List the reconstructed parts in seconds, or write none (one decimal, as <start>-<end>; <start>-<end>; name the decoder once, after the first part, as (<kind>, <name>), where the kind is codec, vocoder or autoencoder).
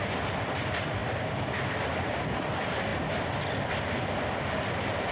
0.0-2.9 (vocoder, BigVGAN v2)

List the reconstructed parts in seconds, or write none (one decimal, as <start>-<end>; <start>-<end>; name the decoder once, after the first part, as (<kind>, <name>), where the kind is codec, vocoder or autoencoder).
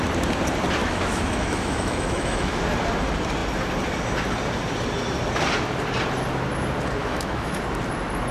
0.8-2.6 (autoencoder, DAC-VAE); 7.0-7.6